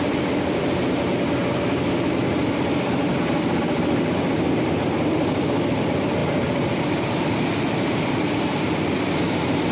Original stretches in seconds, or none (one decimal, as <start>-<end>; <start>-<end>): 0.0-2.2; 3.6-6.2; 8.8-9.7